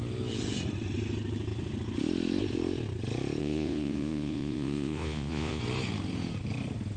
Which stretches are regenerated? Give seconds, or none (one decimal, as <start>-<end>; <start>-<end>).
3.4-5.6